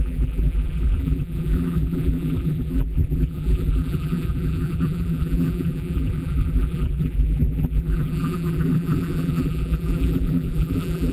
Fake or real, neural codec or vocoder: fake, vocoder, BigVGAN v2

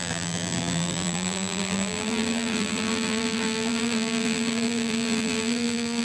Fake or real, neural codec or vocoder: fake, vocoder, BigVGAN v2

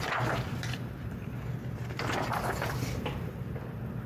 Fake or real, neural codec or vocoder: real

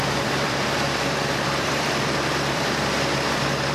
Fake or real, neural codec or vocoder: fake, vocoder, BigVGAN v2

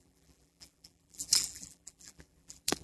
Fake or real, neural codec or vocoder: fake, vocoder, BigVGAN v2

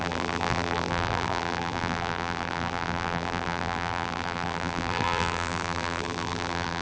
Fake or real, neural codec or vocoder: fake, vocoder, BigVGAN v2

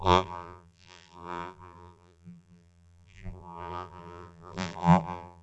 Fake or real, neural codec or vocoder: fake, vocoder, BigVGAN v2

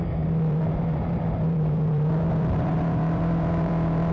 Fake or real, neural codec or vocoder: fake, vocoder, BigVGAN v2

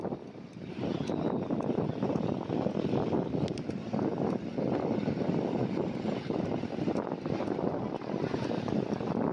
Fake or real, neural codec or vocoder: real